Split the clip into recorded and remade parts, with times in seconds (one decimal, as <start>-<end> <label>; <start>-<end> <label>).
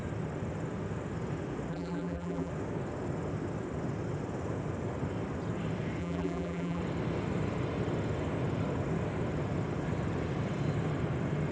0.0-1.7 recorded; 1.7-2.5 remade; 2.5-6.0 recorded; 6.0-6.8 remade; 6.8-11.5 recorded